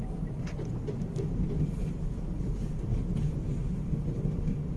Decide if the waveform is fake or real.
real